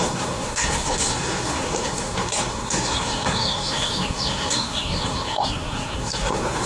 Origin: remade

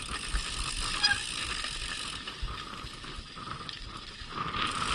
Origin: recorded